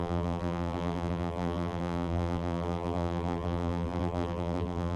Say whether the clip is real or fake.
fake